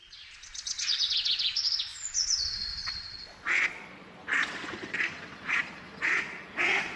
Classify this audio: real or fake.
fake